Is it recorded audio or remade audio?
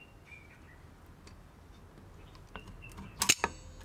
recorded